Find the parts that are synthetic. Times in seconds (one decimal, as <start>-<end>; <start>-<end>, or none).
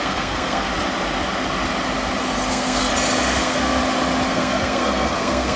0.0-0.7; 2.5-2.9; 3.4-3.8; 4.3-5.6